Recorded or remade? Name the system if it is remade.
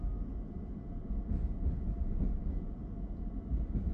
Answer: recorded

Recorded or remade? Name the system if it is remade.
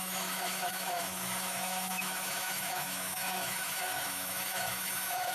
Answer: remade, autoencoder, DAC-VAE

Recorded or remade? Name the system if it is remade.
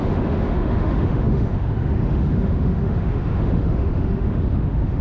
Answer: remade, autoencoder, DAC-VAE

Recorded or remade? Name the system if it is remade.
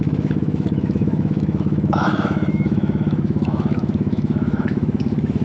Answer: remade, autoencoder, DAC-VAE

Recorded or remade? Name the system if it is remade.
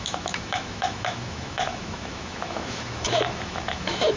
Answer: remade, autoencoder, DAC-VAE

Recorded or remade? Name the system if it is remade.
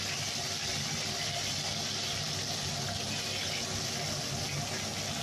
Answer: recorded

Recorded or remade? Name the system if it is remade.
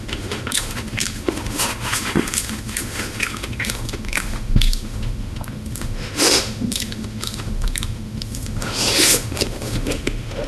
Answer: remade, autoencoder, DAC-VAE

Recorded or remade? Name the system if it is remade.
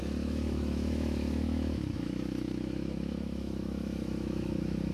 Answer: remade, autoencoder, DAC-VAE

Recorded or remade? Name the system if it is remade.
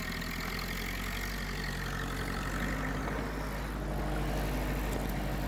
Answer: recorded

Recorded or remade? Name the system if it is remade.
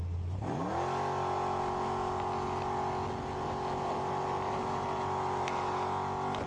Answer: recorded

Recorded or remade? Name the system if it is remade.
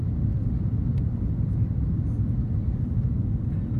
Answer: recorded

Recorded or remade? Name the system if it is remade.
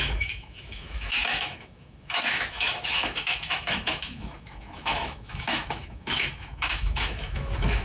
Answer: remade, autoencoder, DAC-VAE